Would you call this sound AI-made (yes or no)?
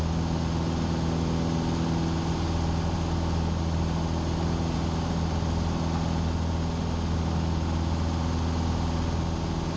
no